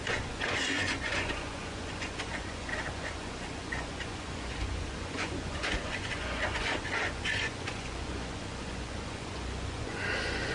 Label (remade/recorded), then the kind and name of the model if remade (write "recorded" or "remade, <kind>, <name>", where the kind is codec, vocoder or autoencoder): remade, vocoder, Vocos